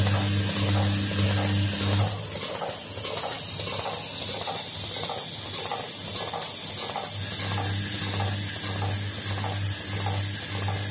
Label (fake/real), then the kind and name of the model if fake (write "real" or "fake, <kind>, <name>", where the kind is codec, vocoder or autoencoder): real